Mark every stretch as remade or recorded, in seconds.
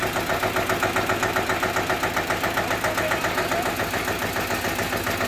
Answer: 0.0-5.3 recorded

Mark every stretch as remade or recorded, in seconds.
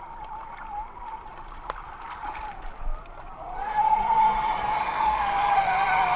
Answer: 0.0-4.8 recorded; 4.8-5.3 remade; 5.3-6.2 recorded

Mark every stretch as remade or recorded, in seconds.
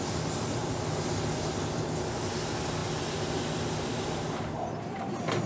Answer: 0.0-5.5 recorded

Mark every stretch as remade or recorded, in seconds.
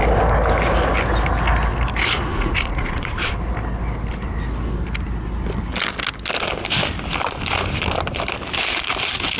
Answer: 0.0-2.3 recorded; 2.3-3.3 remade; 3.3-9.4 recorded